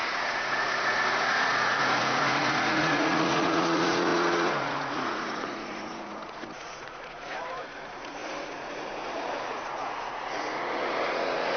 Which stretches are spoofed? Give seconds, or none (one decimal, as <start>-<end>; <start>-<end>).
0.0-11.6